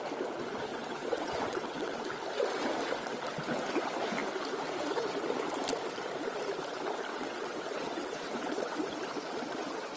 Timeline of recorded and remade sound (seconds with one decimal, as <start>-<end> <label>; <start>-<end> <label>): 0.0-0.7 recorded; 0.7-2.1 remade; 2.1-7.1 recorded; 7.1-8.8 remade; 8.8-10.0 recorded